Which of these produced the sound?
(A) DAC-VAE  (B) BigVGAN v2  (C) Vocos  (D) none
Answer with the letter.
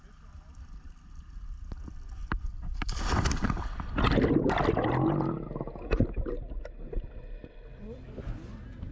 D